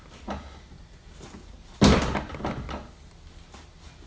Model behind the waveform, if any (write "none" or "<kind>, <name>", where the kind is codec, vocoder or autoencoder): none